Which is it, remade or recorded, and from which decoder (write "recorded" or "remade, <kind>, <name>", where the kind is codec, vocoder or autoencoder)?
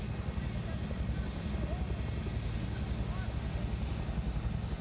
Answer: recorded